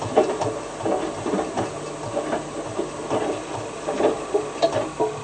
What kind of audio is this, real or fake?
real